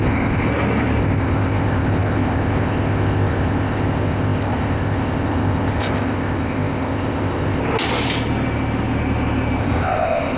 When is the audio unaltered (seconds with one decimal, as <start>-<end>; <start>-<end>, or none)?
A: 0.5-1.0; 7.6-9.6